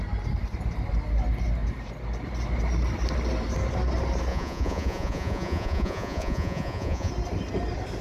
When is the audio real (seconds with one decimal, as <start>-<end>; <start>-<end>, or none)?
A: 0.0-4.3; 7.1-8.0